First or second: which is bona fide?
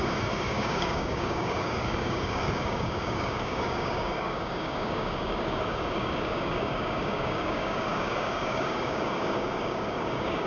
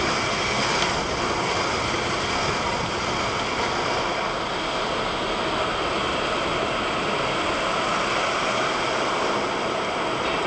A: second